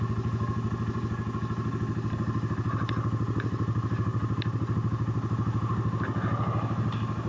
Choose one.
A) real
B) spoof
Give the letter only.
A